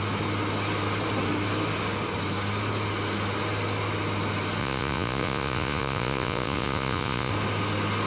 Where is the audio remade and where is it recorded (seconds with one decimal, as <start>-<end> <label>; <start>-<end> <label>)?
0.0-4.6 recorded; 4.6-7.3 remade; 7.3-8.1 recorded